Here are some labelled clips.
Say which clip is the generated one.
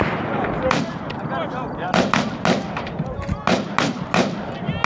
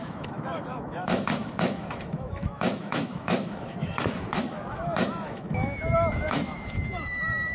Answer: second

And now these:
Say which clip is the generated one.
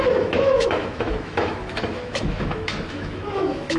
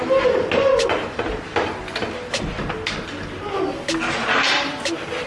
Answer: first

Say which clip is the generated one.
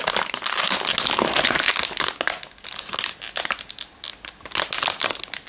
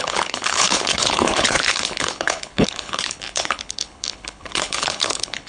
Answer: second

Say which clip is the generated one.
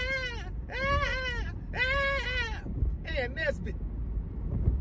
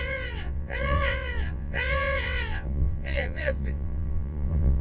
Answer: second